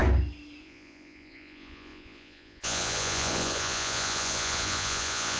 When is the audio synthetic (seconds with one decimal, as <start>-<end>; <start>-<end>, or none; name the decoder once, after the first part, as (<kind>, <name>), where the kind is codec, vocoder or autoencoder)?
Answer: 0.6-5.4 (vocoder, Vocos)